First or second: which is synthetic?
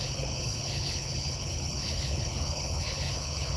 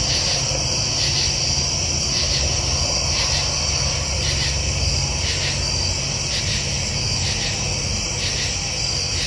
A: first